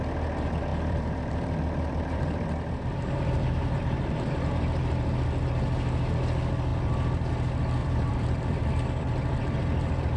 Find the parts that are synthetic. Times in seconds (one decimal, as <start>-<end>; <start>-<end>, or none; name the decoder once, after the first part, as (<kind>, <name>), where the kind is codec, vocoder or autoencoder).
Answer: 0.7-4.5 (vocoder, BigVGAN v2); 6.7-7.3; 7.8-10.2